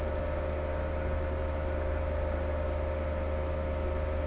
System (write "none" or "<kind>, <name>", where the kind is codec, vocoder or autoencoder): none